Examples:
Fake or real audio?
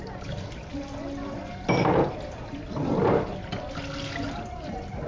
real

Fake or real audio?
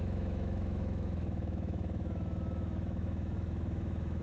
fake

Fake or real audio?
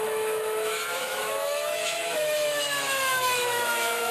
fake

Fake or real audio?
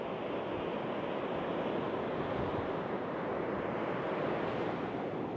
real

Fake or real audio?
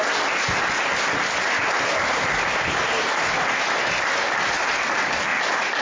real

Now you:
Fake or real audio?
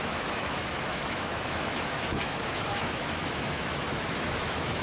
fake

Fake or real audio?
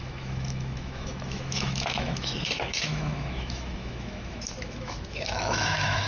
fake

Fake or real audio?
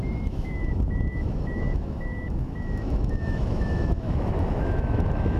fake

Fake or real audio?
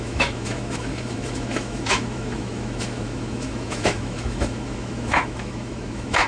fake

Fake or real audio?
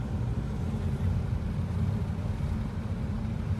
real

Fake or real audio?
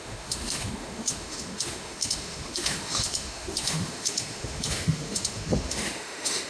fake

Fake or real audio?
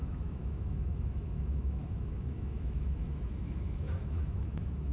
fake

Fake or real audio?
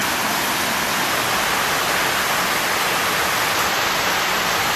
real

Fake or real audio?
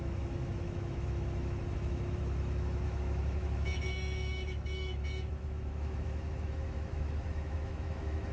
fake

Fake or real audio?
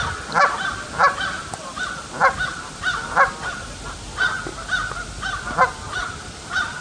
real